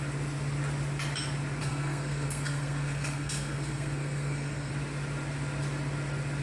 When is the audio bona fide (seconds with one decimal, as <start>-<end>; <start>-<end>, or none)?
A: 0.0-1.6; 4.7-6.4